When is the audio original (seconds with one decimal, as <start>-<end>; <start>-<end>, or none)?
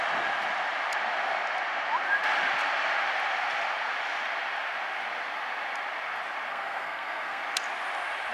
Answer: 0.0-6.5; 7.4-8.3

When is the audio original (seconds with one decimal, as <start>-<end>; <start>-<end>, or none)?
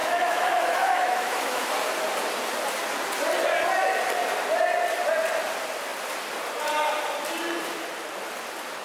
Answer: 1.7-8.8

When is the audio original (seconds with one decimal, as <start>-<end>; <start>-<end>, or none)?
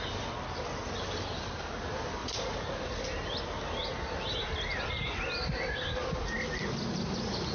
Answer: 0.0-2.2; 3.0-7.5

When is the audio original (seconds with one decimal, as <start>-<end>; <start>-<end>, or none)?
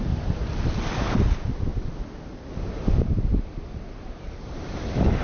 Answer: 0.5-1.0; 1.7-2.6; 3.3-4.0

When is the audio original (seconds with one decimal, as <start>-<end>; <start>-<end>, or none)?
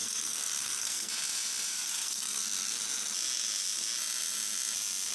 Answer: 1.1-1.7; 2.8-5.1